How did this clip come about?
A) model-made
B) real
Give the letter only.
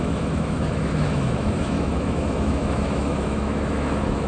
A